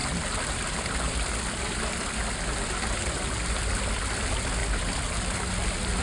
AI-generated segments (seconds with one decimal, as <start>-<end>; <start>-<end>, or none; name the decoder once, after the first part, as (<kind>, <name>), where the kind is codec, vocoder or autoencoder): none